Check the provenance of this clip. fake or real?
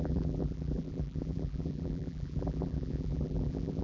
fake